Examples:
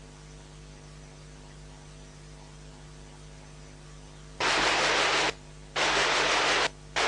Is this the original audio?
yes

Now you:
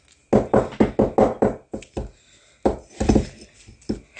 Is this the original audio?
yes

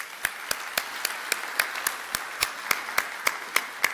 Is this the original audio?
yes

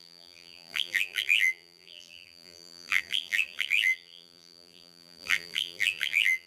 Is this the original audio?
no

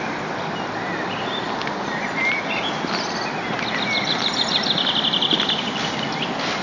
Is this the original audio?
yes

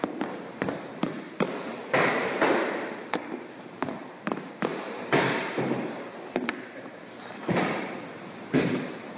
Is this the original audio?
no